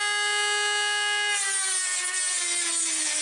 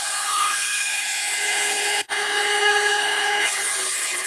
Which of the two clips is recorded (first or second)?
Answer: first